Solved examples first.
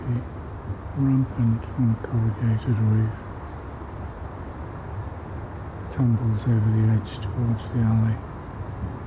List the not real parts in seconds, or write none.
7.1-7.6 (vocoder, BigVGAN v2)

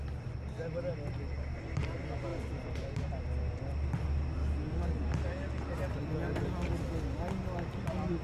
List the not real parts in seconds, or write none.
none

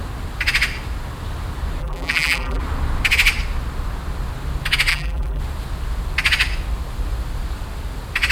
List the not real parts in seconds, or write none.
1.8-2.6 (vocoder, BigVGAN v2); 4.9-5.4

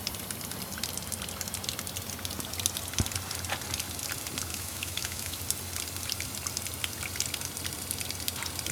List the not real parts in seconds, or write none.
4.5-5.4 (autoencoder, DAC-VAE)